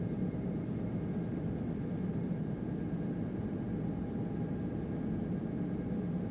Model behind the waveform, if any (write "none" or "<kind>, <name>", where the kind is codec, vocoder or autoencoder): none